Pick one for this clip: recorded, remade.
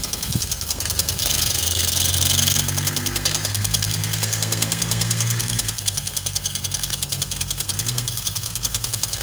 remade